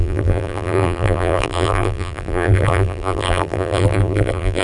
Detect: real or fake fake